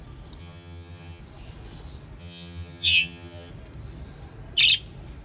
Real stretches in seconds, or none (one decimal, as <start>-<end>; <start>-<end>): 0.0-0.4; 1.2-2.2; 3.5-5.2